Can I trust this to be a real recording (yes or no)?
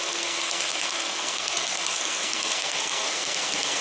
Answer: no